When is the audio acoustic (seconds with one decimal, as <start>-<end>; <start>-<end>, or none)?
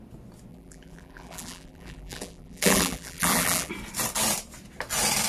0.0-0.5; 3.7-5.3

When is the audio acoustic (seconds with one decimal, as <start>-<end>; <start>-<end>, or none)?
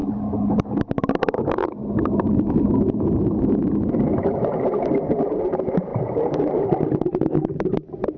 0.6-1.8; 2.3-5.9; 6.6-8.2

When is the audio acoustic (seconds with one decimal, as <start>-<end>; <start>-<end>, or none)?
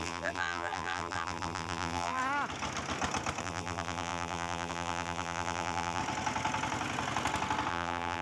2.2-3.4; 6.0-7.7